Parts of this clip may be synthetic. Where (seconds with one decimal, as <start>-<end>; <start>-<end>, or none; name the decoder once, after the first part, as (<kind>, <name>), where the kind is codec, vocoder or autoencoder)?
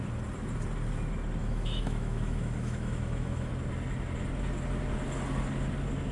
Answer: 1.4-3.5 (autoencoder, DAC-VAE)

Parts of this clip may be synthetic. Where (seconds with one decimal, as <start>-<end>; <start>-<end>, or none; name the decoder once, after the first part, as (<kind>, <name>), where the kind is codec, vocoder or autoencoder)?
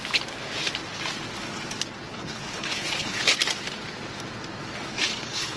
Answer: 2.1-3.3 (codec, HILCodec); 4.9-5.6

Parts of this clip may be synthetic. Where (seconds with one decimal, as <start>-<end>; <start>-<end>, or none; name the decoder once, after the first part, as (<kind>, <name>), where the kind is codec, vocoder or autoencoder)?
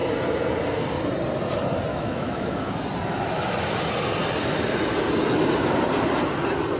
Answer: 1.9-2.7 (autoencoder, DAC-VAE)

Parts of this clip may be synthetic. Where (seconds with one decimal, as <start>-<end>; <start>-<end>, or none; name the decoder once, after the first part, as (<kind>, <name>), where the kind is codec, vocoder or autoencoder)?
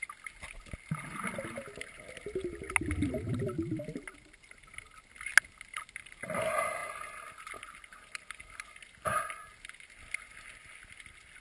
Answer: none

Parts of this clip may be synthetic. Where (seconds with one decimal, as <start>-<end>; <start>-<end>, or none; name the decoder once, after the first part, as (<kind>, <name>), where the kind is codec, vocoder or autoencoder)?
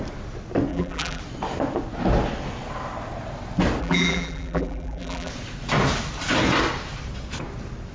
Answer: 0.7-1.2 (vocoder, BigVGAN v2); 3.8-5.3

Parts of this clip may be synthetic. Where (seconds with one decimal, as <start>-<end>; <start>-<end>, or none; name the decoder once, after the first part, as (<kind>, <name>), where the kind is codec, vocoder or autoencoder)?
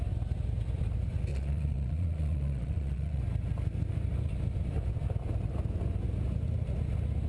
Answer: 1.3-3.2 (vocoder, Vocos)